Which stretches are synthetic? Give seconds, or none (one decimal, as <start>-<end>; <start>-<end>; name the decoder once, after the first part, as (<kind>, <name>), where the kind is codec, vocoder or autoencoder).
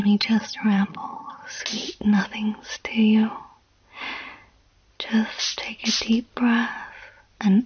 0.0-1.6 (vocoder, HiFi-GAN)